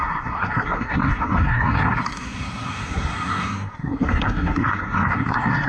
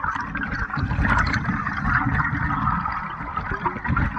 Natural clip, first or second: second